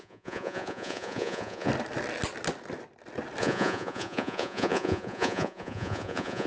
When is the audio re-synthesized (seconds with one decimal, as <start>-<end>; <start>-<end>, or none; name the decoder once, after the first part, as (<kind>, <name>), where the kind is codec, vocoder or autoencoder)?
0.0-1.7 (vocoder, Vocos); 3.4-6.5